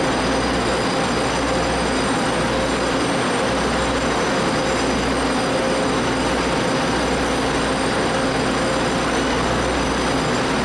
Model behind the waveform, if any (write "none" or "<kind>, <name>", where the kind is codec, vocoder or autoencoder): none